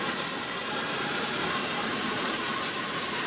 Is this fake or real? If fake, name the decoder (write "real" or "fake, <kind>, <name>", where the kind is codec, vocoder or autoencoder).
fake, vocoder, BigVGAN v2